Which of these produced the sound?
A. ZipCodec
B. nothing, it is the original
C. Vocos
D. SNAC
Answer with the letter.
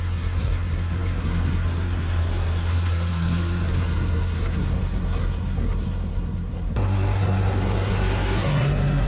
D